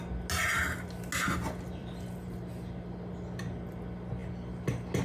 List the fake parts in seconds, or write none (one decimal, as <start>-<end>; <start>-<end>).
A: 1.8-2.6